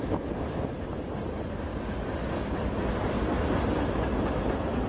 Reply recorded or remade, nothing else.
recorded